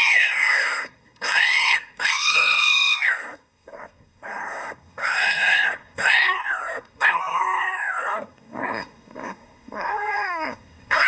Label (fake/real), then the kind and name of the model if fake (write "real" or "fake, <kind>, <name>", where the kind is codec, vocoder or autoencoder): fake, codec, SNAC